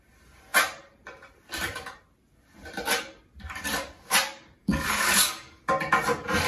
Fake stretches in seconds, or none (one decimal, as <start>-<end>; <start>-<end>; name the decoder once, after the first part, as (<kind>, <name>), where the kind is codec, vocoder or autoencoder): 4.6-5.6 (codec, DAC)